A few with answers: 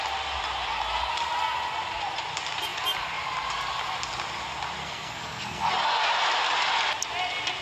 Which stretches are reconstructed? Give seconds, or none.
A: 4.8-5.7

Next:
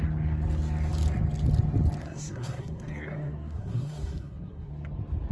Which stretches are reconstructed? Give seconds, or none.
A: 2.0-4.7

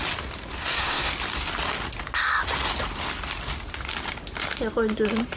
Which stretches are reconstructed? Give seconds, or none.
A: 0.6-1.1

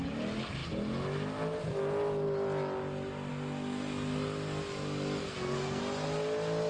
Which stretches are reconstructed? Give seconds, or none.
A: 5.2-5.8